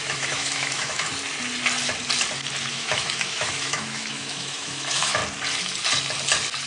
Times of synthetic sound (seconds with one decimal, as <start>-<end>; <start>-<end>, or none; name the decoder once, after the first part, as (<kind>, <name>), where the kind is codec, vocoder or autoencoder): 0.0-1.1 (autoencoder, DAC-VAE); 2.7-5.2